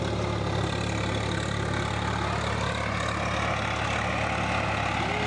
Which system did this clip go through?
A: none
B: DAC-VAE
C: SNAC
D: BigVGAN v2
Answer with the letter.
A